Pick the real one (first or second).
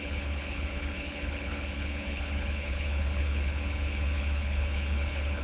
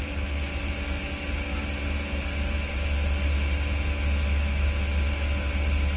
second